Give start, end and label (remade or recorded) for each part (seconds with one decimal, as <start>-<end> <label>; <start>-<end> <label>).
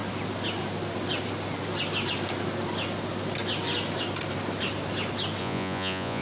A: 0.0-5.4 recorded; 5.4-6.2 remade